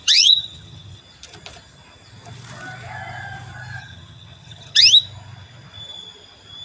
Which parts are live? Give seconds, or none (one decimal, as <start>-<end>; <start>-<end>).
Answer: 1.0-3.8; 4.8-6.6